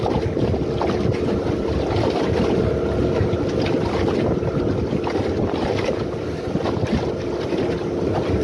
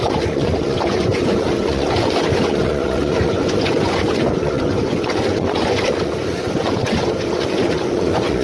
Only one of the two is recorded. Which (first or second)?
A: first